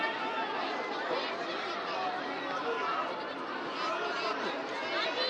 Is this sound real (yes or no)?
no